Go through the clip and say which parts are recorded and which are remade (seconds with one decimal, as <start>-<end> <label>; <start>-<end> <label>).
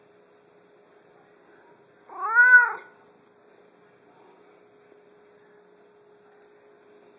0.0-7.2 recorded